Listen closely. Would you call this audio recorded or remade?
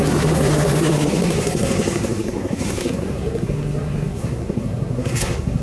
remade